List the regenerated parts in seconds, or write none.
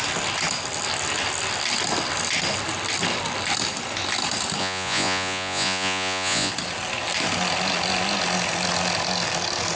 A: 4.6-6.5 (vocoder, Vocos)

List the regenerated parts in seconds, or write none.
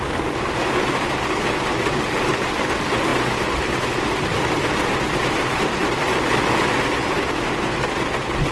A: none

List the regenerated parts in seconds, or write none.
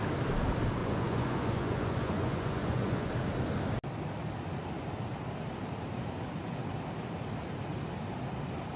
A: 0.8-3.1 (vocoder, Vocos)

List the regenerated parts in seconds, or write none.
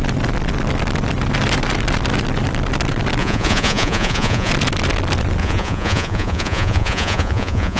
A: 3.2-4.5 (vocoder, Vocos); 5.4-7.8